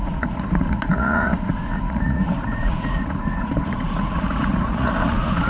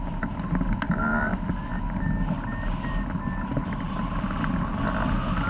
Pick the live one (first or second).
second